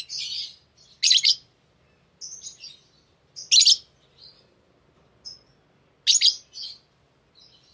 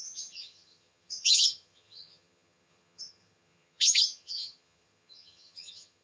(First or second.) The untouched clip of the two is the first